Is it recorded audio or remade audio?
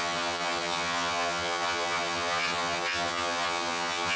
remade